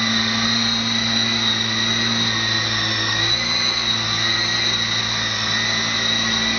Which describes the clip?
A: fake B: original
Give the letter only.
B